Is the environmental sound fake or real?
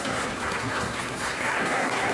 fake